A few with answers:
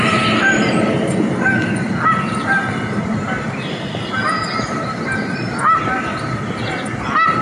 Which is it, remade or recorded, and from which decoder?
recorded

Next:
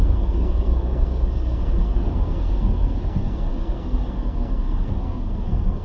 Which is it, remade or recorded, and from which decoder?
remade, codec, SNAC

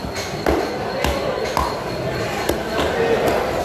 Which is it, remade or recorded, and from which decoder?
recorded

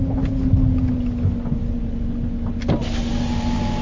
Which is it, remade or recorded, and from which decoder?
recorded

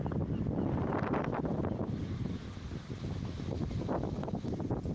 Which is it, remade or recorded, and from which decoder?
recorded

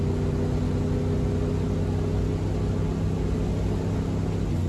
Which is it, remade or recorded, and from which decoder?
recorded